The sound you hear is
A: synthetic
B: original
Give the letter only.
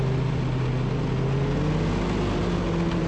B